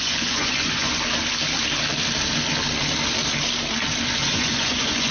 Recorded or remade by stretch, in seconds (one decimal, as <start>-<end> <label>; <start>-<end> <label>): 0.0-0.9 remade; 0.9-4.0 recorded; 4.0-5.1 remade